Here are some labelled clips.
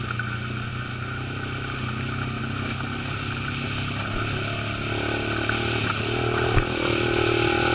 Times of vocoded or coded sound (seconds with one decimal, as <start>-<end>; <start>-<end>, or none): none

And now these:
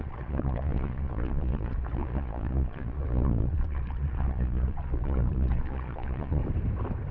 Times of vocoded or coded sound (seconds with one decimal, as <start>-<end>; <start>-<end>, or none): 0.0-6.4

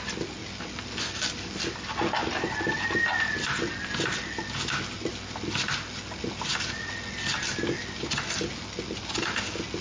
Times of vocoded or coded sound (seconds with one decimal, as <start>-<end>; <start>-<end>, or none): none